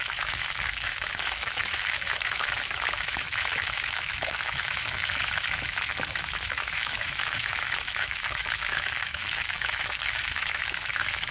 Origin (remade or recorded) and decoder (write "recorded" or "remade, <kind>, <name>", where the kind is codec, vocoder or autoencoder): remade, autoencoder, DAC-VAE